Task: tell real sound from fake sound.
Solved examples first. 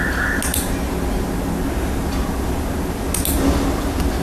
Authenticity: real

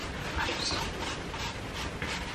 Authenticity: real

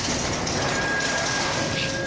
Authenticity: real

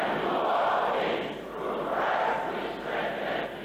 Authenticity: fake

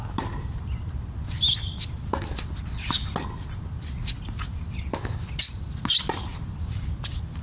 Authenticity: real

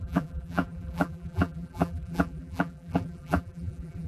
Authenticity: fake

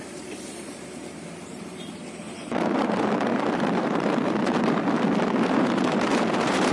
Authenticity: fake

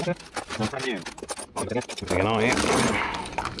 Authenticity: real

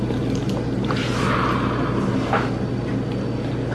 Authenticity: real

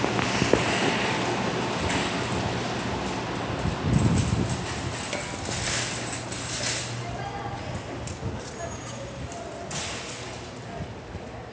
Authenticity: real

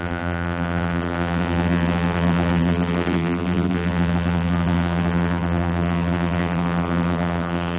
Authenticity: fake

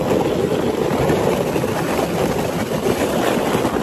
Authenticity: real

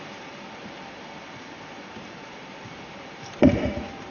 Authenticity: fake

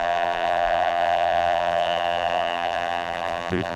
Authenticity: fake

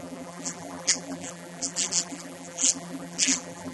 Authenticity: fake